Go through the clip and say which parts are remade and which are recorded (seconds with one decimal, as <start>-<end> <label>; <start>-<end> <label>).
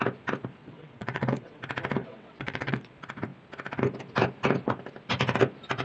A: 0.0-0.6 recorded; 0.6-1.6 remade; 1.6-2.0 recorded; 2.0-2.9 remade; 2.9-5.8 recorded